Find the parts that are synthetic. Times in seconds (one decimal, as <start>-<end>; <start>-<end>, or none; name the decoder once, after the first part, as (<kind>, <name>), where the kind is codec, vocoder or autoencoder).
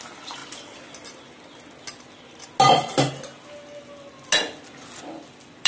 none